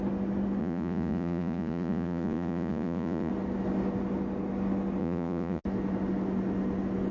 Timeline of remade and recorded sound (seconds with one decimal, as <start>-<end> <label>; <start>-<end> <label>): 0.0-0.6 recorded; 0.6-3.3 remade; 3.3-5.0 recorded; 5.0-5.6 remade; 5.6-7.1 recorded